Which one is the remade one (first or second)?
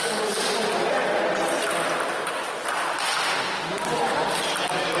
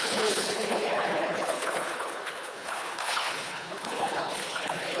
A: second